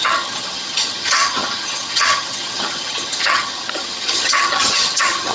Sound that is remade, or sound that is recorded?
remade